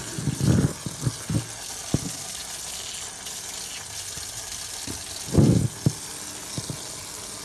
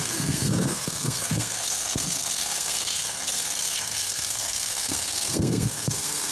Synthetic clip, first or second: second